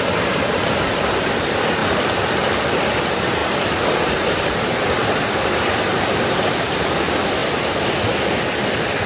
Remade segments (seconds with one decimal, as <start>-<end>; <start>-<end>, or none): none